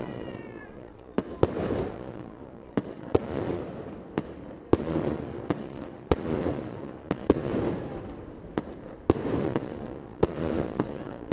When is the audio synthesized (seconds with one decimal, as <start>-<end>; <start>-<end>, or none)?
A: 0.0-1.3; 1.9-3.6; 4.8-7.5; 9.4-11.3